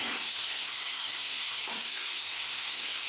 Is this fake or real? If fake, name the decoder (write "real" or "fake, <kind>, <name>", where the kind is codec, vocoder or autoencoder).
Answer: fake, codec, SNAC